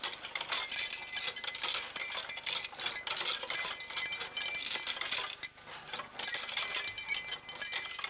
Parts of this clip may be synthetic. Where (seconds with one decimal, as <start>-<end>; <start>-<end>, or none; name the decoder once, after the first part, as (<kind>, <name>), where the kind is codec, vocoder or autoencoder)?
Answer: none